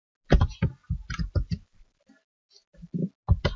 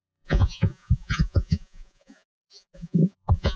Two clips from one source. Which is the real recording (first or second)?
first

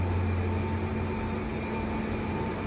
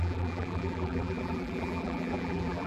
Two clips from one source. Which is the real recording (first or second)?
first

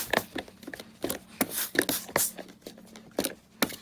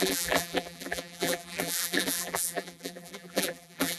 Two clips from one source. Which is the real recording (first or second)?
first